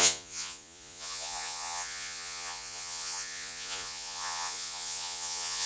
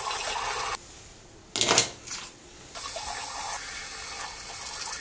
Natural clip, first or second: second